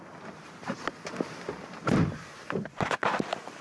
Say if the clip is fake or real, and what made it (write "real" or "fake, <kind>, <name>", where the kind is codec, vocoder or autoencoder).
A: fake, vocoder, BigVGAN v2